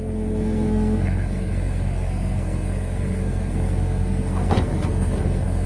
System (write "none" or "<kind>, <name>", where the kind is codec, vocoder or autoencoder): codec, SNAC